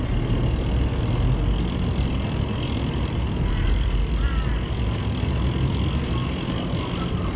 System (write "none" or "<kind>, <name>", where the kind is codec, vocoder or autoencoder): none